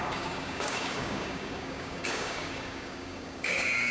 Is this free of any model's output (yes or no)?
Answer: no